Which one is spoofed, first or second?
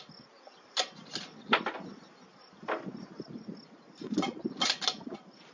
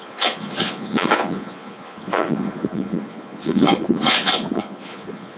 second